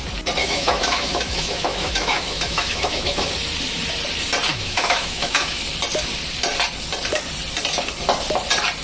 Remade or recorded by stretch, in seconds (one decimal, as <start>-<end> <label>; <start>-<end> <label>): 0.0-0.4 recorded; 0.4-3.3 remade; 3.3-4.5 recorded; 4.5-5.6 remade; 5.6-8.8 recorded